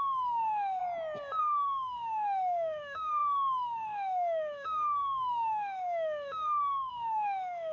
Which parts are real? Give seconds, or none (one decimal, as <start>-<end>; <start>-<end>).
0.8-1.4